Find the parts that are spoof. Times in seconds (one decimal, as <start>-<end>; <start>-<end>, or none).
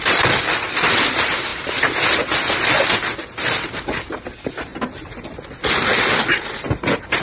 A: none